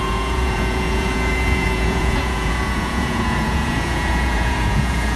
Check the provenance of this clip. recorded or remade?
remade